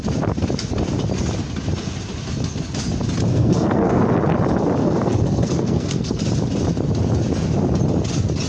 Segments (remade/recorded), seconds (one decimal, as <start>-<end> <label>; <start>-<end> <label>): 0.0-3.3 recorded; 3.3-4.0 remade; 4.0-4.8 recorded; 4.8-6.2 remade; 6.2-8.5 recorded